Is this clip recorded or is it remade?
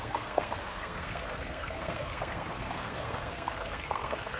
remade